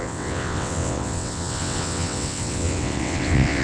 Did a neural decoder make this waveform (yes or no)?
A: yes